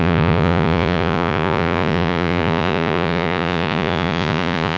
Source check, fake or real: fake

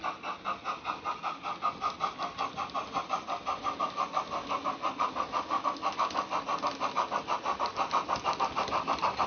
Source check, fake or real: real